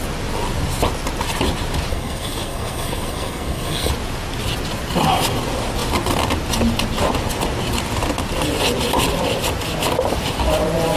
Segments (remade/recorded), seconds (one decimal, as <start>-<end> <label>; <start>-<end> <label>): 0.0-1.9 recorded; 1.9-3.9 remade; 3.9-11.0 recorded